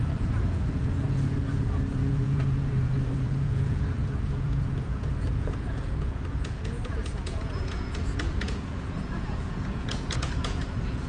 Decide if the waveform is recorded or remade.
remade